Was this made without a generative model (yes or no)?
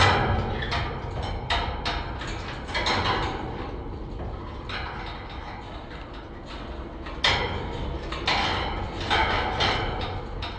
yes